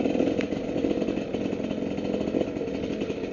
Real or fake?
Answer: real